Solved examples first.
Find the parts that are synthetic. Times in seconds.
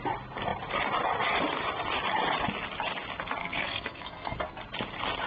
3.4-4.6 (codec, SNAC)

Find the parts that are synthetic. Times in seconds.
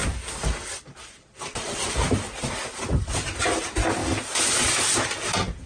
none